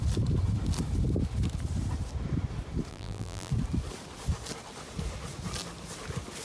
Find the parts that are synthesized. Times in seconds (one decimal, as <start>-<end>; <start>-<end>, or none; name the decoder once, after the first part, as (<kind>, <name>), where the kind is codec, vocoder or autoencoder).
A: 2.9-3.5 (vocoder, BigVGAN v2)